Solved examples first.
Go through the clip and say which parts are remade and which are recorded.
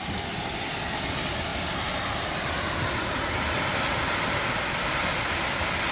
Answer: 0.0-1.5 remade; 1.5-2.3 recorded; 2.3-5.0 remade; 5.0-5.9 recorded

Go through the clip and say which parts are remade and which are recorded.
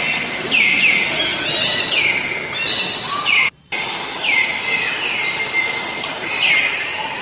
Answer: 0.0-7.2 recorded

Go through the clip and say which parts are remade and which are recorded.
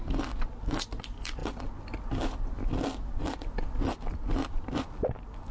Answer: 0.0-5.5 recorded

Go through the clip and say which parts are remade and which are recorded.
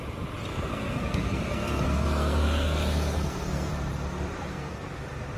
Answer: 0.0-0.5 recorded; 0.5-3.7 remade; 3.7-4.5 recorded; 4.5-5.0 remade; 5.0-5.4 recorded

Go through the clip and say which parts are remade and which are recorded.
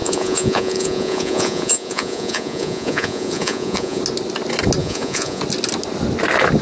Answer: 0.0-4.0 remade; 4.0-4.8 recorded; 4.8-5.4 remade; 5.4-6.6 recorded